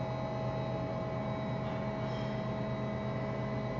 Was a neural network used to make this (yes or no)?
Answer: no